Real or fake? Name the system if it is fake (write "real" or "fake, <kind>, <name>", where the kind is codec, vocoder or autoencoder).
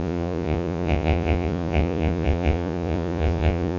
fake, vocoder, Vocos